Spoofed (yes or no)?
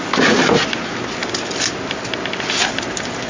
no